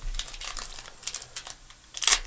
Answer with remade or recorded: recorded